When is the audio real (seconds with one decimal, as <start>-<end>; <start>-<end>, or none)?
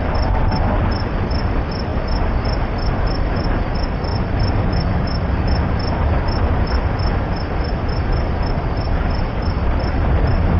1.9-3.0; 4.1-8.0